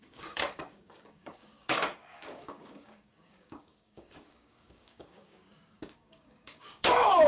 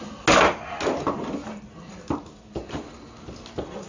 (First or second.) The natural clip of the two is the second